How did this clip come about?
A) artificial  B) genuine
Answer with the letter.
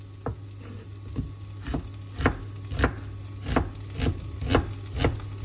B